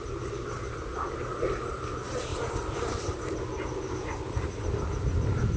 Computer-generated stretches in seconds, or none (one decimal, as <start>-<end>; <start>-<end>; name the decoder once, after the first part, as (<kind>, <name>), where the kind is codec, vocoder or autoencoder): none